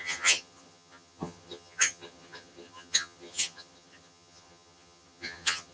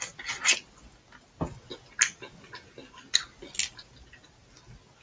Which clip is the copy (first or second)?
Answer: first